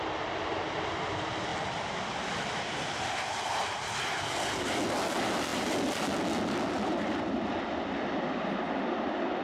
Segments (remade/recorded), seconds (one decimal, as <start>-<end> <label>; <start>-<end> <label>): 0.0-1.5 recorded; 1.5-4.6 remade; 4.6-5.5 recorded; 5.5-6.0 remade; 6.0-9.4 recorded